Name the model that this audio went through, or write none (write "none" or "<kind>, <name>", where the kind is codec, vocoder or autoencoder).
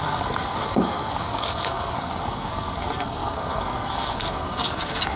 codec, SNAC